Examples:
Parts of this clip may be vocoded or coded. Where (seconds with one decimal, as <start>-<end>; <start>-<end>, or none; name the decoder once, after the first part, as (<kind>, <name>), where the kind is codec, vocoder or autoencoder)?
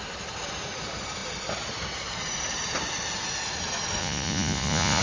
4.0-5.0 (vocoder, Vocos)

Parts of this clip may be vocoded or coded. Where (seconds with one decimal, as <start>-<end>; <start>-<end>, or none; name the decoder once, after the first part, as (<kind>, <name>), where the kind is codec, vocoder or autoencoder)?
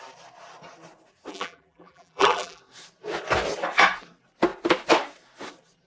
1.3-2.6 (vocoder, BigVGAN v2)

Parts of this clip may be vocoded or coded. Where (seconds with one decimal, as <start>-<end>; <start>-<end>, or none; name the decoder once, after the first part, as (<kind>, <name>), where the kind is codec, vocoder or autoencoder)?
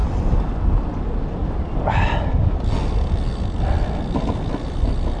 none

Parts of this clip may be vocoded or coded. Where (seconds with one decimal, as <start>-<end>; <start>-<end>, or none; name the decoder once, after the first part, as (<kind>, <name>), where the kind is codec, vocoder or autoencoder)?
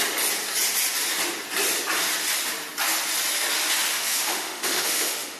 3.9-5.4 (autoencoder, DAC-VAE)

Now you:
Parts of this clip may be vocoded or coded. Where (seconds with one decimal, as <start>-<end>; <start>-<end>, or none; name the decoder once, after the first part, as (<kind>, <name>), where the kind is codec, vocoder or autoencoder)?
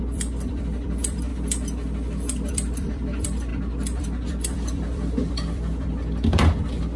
0.0-1.3 (vocoder, BigVGAN v2); 2.5-7.0